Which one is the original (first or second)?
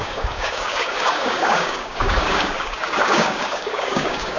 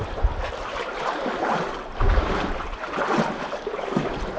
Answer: second